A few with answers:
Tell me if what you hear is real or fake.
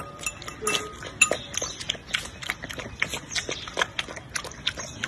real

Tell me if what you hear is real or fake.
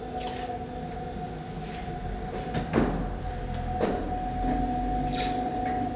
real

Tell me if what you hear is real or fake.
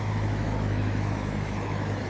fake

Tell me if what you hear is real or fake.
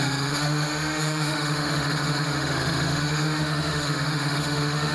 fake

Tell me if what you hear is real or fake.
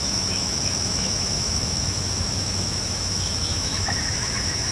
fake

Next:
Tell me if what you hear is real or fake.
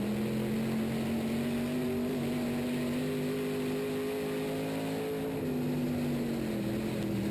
real